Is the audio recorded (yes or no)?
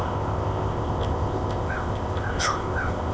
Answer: no